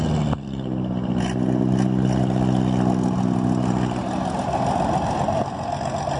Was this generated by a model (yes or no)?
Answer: no